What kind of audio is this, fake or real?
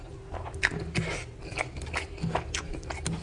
real